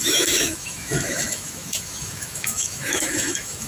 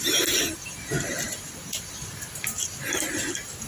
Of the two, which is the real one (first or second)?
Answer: second